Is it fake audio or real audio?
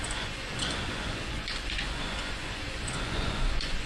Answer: fake